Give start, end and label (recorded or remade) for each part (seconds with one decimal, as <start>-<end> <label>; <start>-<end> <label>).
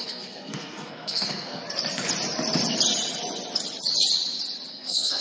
0.0-1.6 remade; 1.6-4.7 recorded; 4.7-5.2 remade